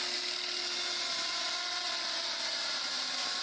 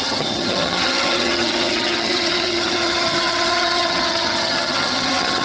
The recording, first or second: first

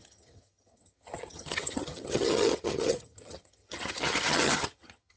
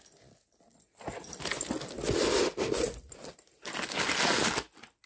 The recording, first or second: second